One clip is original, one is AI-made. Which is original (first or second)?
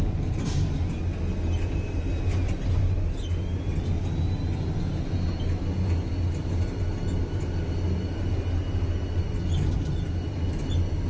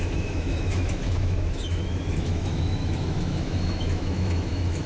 first